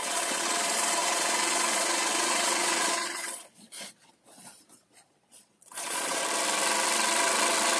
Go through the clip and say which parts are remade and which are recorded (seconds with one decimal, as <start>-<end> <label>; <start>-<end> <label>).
0.0-6.2 remade; 6.2-7.8 recorded